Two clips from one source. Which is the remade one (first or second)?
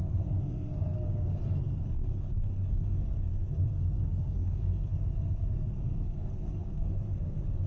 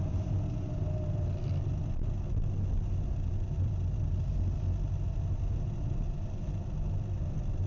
first